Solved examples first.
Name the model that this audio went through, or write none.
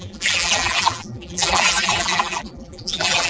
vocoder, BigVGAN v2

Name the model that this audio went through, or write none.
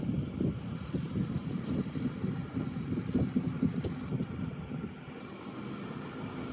none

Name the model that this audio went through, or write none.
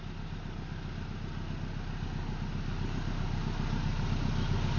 none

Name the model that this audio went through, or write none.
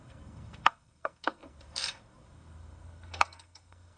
codec, SNAC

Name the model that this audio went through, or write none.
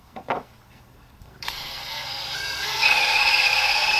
codec, SNAC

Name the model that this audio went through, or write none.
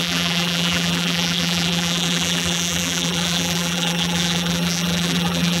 vocoder, BigVGAN v2